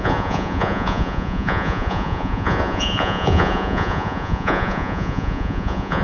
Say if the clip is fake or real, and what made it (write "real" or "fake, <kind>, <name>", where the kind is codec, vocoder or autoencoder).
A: fake, vocoder, Vocos